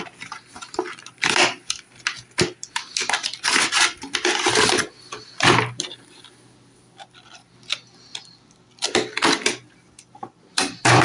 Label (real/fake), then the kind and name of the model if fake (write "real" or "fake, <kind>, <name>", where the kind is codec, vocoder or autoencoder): fake, vocoder, BigVGAN v2